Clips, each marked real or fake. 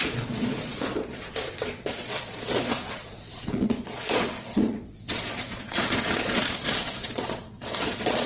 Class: fake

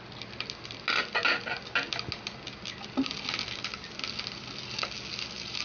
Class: real